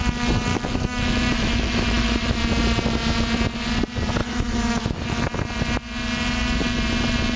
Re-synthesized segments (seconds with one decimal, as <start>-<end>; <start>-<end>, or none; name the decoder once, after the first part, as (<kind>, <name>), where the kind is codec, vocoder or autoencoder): 0.5-2.4 (autoencoder, DAC-VAE); 4.2-5.2